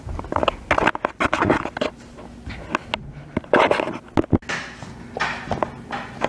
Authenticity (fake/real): real